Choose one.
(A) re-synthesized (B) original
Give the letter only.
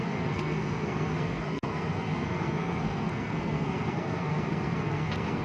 A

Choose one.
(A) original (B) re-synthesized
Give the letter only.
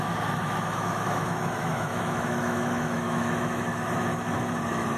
B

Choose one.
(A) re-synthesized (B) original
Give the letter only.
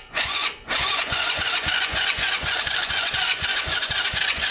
A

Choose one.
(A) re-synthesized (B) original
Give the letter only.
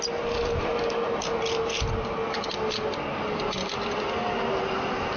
B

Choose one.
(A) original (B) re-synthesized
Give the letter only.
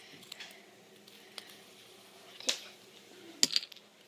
A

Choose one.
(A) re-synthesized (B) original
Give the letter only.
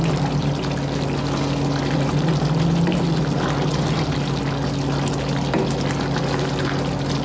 B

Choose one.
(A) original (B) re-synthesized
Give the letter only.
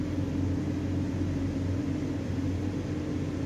A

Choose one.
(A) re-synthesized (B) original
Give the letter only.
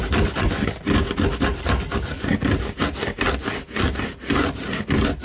B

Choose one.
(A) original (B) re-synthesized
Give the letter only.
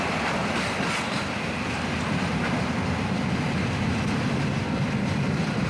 A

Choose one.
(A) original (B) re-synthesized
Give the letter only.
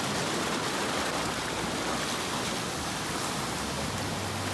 A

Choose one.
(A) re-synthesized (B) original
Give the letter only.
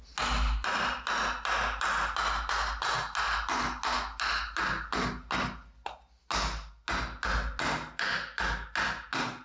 B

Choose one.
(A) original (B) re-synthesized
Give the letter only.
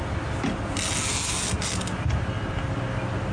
A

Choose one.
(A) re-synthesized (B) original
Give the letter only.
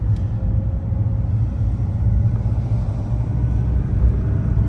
B